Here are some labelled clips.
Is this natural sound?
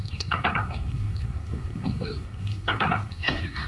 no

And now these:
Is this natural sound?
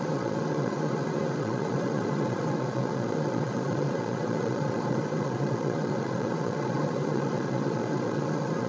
no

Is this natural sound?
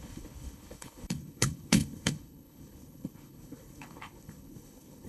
no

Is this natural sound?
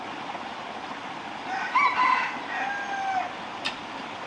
no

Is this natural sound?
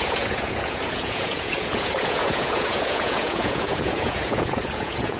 no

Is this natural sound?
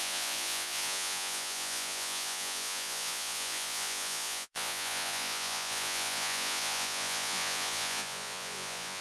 no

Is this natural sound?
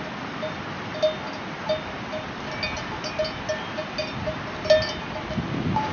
yes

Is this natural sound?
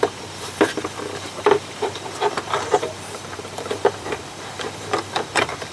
no